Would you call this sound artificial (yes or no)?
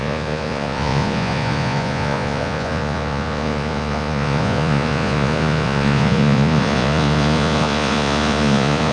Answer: yes